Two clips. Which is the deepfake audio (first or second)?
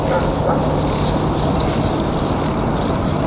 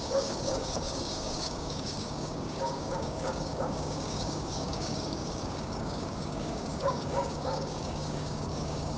second